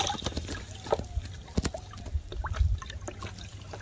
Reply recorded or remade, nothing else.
recorded